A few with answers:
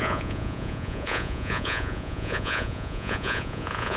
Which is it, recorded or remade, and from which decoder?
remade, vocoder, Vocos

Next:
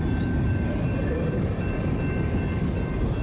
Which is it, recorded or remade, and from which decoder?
recorded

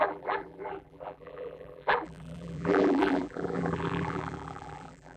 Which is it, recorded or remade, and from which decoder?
remade, vocoder, BigVGAN v2